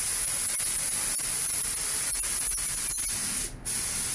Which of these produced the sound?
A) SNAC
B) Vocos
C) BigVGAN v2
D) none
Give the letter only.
D